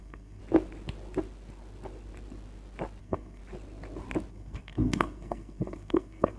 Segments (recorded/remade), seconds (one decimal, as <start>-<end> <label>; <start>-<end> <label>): 0.0-0.4 remade; 0.4-3.0 recorded; 3.0-3.4 remade; 3.4-4.3 recorded; 4.3-6.4 remade

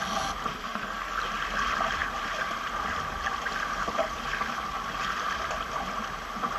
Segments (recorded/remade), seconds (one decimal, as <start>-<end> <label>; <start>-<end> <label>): 0.0-0.5 recorded; 0.5-1.2 remade; 1.2-6.6 recorded

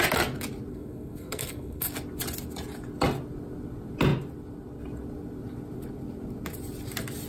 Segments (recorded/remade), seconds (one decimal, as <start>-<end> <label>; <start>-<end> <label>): 0.0-0.7 recorded; 0.7-1.9 remade; 1.9-7.3 recorded

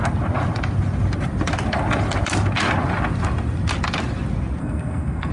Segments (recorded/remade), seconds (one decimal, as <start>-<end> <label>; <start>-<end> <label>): 0.0-4.6 recorded; 4.6-5.3 remade

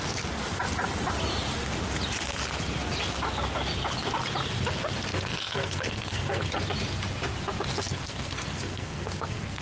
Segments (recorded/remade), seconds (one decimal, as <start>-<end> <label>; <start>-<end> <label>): 0.0-5.1 recorded; 5.1-6.5 remade; 6.5-7.9 recorded; 7.9-9.6 remade

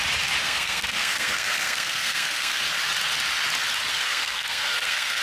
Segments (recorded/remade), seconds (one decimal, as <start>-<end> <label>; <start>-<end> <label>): 0.0-0.4 recorded; 0.4-2.6 remade; 2.6-3.9 recorded; 3.9-5.2 remade

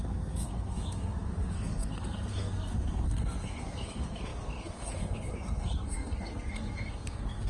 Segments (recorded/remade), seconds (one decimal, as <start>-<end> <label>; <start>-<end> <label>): 0.0-7.5 remade

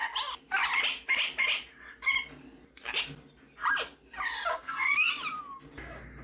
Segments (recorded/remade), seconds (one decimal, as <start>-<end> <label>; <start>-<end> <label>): 0.0-4.5 recorded; 4.5-5.1 remade; 5.1-6.2 recorded